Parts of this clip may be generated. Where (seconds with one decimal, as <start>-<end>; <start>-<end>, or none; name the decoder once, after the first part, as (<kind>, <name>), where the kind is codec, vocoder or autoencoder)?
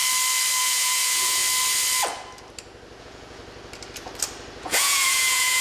0.6-1.4 (vocoder, Vocos); 3.0-3.4; 4.6-5.6